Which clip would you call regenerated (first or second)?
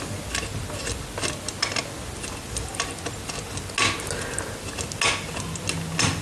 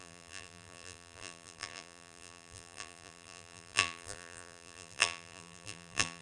second